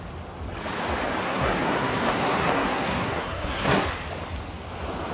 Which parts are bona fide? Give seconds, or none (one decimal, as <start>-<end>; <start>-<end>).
0.0-1.2; 3.9-5.1